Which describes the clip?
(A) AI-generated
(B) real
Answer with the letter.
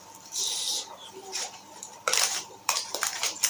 A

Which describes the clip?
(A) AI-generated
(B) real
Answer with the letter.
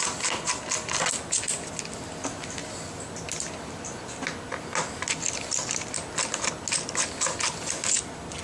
B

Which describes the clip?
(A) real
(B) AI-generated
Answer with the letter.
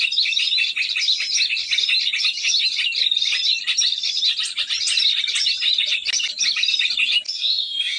A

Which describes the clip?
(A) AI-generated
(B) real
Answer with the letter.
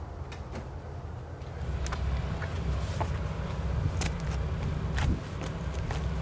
B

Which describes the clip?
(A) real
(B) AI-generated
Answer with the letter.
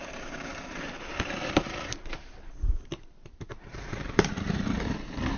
B